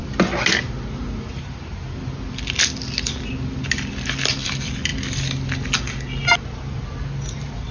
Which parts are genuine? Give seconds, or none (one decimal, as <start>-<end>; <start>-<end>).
0.0-7.7